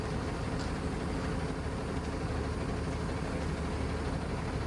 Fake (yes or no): no